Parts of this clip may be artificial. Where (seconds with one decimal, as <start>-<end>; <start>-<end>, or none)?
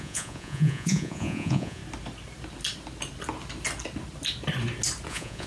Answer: 0.0-1.8; 5.1-5.5